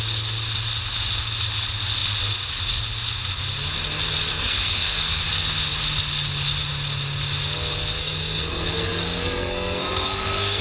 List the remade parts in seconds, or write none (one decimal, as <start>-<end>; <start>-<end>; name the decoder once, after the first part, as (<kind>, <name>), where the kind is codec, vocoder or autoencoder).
4.3-5.2 (codec, SNAC); 8.0-10.6